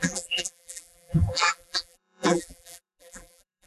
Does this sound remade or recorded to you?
remade